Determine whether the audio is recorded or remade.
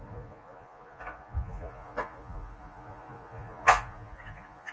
remade